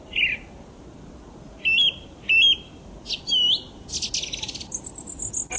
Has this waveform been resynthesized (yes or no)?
no